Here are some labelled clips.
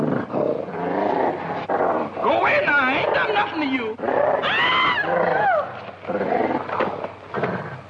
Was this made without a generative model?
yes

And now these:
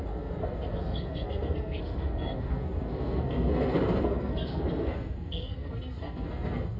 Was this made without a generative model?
no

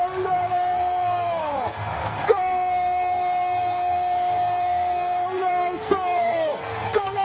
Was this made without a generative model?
no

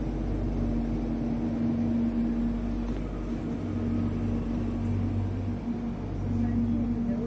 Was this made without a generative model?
yes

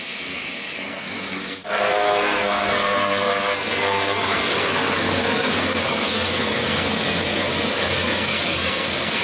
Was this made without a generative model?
no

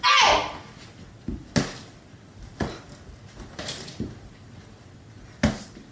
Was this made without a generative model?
yes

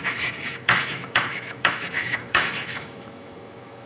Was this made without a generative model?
no